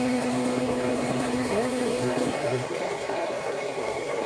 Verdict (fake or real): fake